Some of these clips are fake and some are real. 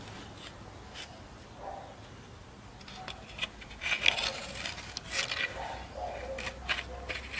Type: real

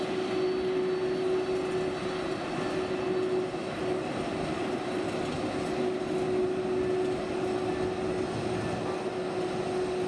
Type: real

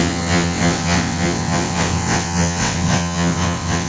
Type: fake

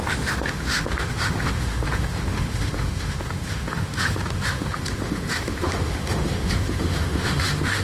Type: fake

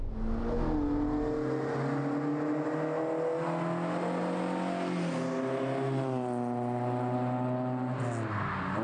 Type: real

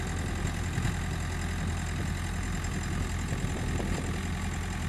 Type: real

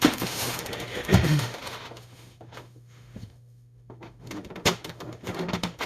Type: fake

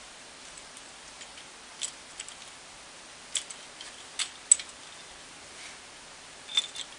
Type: real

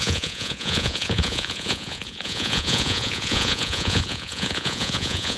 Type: fake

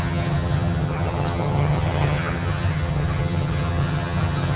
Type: fake